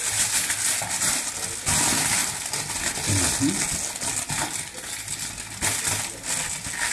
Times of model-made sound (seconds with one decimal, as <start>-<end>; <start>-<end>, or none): none